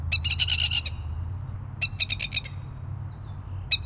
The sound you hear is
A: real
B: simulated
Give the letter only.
A